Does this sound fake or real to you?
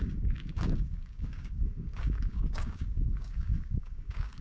fake